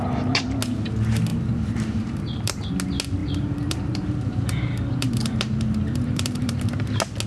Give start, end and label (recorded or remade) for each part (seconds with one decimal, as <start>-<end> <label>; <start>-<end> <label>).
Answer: 0.0-1.3 recorded; 1.3-2.7 remade; 2.7-3.2 recorded; 3.2-6.6 remade; 6.6-7.3 recorded